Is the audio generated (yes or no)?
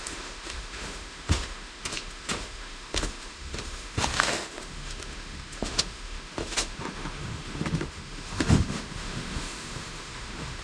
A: yes